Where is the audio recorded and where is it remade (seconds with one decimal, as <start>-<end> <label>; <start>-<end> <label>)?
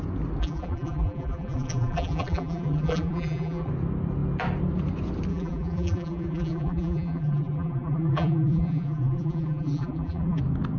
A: 0.0-0.4 recorded; 0.4-3.7 remade; 3.7-5.3 recorded; 5.3-10.4 remade; 10.4-10.8 recorded